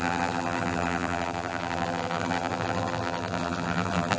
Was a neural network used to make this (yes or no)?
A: yes